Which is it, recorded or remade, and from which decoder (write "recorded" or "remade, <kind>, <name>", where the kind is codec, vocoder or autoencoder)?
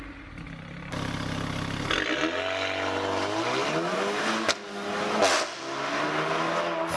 recorded